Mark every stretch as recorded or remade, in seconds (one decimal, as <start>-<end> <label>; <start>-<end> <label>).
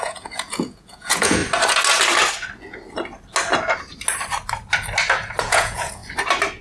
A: 0.0-1.4 remade; 1.4-5.4 recorded; 5.4-6.0 remade; 6.0-6.6 recorded